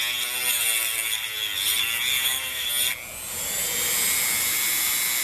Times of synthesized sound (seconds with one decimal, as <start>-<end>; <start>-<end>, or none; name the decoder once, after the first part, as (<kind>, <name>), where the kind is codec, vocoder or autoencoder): 2.1-2.7 (autoencoder, DAC-VAE)